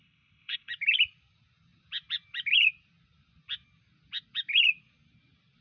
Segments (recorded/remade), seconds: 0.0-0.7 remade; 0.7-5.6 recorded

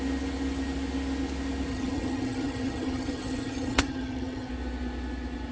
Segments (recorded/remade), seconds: 0.0-1.7 recorded; 1.7-4.5 remade; 4.5-5.5 recorded

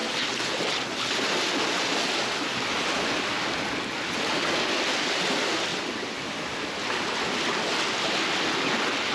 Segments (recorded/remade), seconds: 0.0-9.1 recorded